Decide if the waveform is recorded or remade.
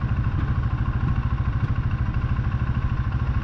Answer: recorded